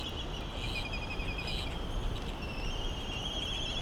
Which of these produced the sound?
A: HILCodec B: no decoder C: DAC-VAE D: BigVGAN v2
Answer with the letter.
B